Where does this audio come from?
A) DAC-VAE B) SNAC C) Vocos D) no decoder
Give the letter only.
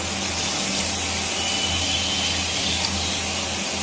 D